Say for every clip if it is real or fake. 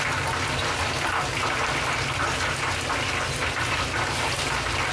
real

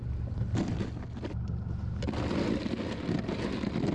real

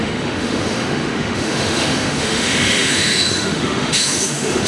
fake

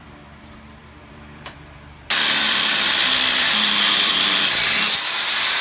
fake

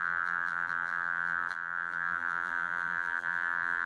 fake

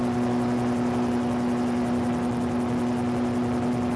real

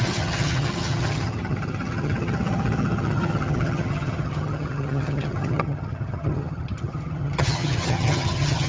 fake